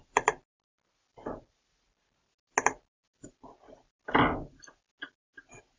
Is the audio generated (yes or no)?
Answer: no